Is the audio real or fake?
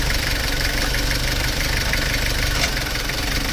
fake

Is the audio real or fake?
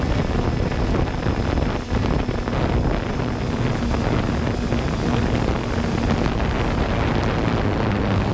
real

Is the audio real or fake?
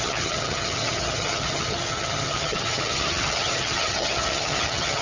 fake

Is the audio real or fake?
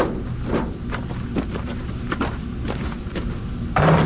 fake